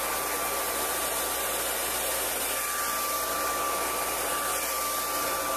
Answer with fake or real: real